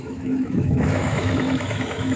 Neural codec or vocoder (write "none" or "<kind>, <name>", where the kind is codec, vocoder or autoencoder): autoencoder, DAC-VAE